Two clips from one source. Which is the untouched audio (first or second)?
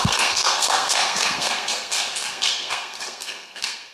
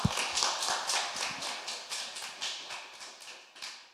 second